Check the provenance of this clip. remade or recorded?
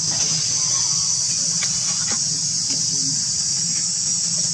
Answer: recorded